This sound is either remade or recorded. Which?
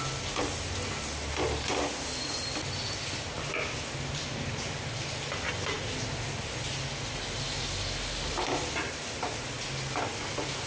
recorded